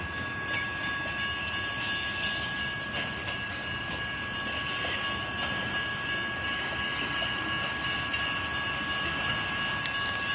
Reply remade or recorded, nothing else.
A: recorded